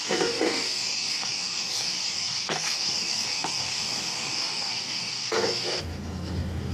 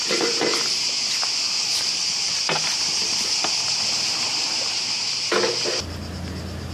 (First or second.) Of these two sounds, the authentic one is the second